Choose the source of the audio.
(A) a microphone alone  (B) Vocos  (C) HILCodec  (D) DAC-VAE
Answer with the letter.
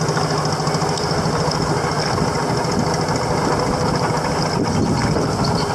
A